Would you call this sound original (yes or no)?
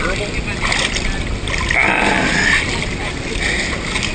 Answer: yes